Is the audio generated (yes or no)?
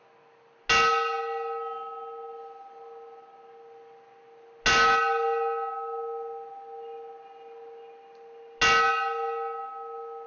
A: no